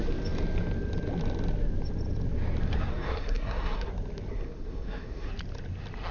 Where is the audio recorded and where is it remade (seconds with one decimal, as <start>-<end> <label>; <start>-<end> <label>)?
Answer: 0.0-2.9 recorded; 2.9-3.9 remade; 3.9-4.3 recorded; 4.3-5.3 remade; 5.3-6.1 recorded